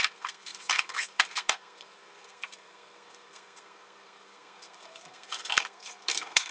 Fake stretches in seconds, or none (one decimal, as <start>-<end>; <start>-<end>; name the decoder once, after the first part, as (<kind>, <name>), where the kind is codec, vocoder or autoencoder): 0.0-6.5 (codec, SNAC)